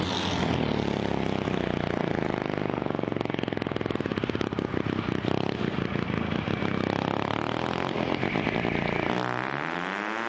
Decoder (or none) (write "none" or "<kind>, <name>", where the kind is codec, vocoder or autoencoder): none